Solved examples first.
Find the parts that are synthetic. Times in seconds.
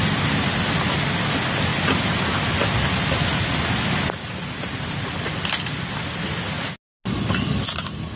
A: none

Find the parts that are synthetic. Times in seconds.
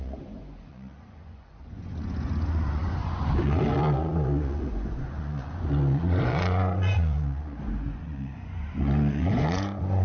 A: 0.0-10.0 (vocoder, Vocos)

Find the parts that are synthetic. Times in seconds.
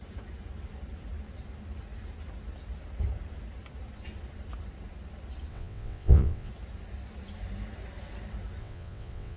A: 5.5-6.5 (vocoder, WaveNeXt); 8.6-9.4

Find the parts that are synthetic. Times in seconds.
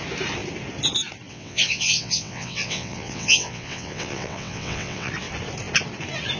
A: 1.3-5.1 (vocoder, WaveNeXt)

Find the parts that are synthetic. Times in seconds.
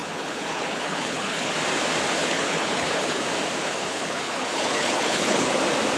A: 0.0-1.5 (codec, HILCodec); 2.2-3.2; 3.6-5.6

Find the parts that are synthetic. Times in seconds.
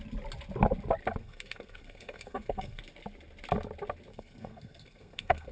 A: 1.2-2.8 (codec, SNAC); 4.1-5.5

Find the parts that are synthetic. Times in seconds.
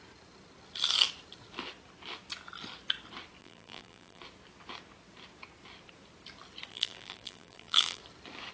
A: 3.4-4.2 (vocoder, BigVGAN v2); 6.7-8.0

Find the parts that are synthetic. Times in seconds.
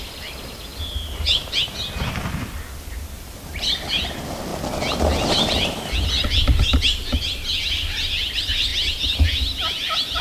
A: 0.0-0.7 (vocoder, BigVGAN v2); 2.6-4.5; 5.3-6.4; 7.6-8.7